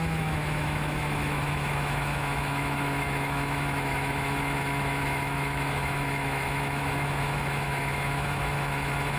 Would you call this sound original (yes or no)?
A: no